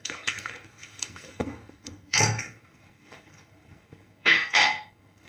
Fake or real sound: fake